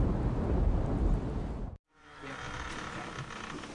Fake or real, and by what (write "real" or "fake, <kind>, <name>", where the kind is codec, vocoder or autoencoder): real